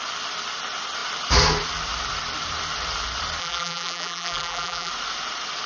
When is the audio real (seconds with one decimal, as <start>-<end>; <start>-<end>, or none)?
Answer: 0.0-3.4; 4.9-5.7